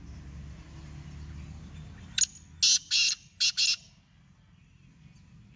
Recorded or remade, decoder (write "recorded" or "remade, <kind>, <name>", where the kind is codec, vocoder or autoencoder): recorded